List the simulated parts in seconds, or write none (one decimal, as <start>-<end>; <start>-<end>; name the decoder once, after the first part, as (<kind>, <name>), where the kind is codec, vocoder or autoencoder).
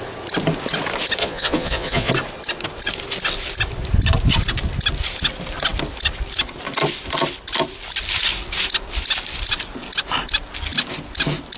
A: 1.2-2.1 (vocoder, Vocos)